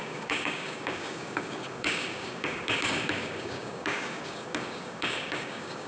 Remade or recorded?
remade